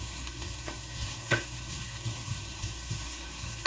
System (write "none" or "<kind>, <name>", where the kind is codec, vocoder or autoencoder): codec, SNAC